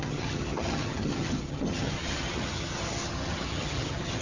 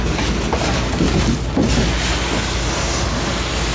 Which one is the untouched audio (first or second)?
second